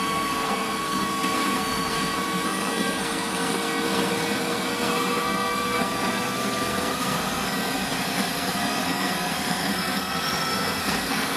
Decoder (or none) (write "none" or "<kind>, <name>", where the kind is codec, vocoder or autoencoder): codec, SNAC